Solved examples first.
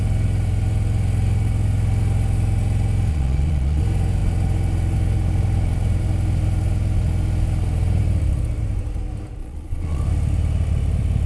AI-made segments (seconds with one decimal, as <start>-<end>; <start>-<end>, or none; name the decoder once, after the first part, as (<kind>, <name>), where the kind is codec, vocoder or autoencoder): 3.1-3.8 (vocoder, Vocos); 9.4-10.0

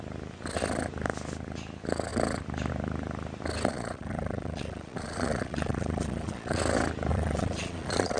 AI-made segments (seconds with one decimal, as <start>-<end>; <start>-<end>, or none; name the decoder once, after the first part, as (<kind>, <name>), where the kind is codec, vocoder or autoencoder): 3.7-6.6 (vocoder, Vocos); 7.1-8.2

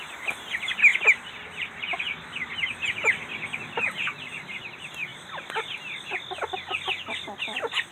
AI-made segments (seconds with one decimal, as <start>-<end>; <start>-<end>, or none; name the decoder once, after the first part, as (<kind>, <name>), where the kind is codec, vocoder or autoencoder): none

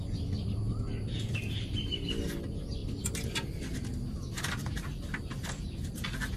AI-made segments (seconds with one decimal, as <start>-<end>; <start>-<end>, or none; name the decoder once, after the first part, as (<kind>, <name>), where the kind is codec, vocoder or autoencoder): none

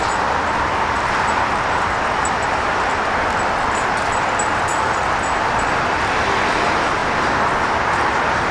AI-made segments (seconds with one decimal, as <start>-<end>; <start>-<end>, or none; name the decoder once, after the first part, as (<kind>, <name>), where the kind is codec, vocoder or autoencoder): none